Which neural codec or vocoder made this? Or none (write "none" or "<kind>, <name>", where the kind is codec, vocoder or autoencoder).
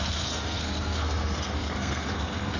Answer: codec, SNAC